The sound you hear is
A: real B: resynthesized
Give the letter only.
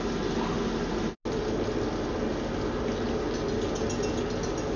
A